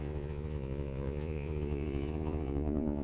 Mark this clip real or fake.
fake